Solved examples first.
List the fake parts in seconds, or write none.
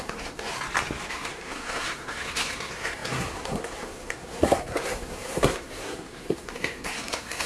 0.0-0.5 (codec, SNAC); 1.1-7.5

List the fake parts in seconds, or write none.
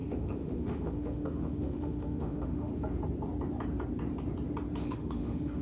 0.0-2.7 (autoencoder, DAC-VAE); 4.8-5.6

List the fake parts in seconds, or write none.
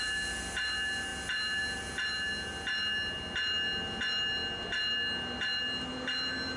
none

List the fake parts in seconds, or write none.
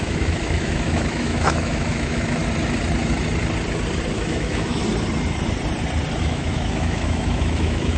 0.0-2.4 (autoencoder, DAC-VAE); 4.1-4.8; 6.2-8.0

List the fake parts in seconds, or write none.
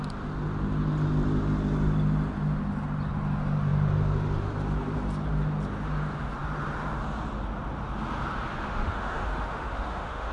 8.6-10.3 (autoencoder, DAC-VAE)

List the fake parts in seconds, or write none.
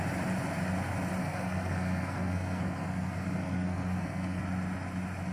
1.2-4.4 (codec, SNAC)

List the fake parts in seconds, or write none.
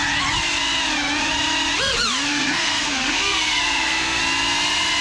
2.3-4.2 (codec, SNAC)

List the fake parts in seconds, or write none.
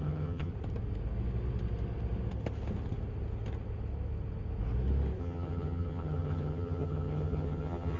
0.0-0.5 (vocoder, HiFi-GAN); 5.2-8.0